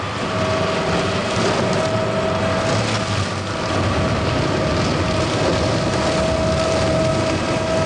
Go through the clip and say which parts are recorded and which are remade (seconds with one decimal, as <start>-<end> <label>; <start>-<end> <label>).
0.0-7.9 recorded